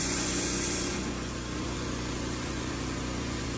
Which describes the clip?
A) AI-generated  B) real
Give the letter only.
A